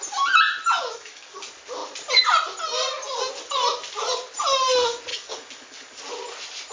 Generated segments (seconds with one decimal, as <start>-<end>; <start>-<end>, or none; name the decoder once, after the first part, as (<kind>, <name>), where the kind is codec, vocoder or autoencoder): 0.8-1.4 (codec, DAC); 5.1-6.0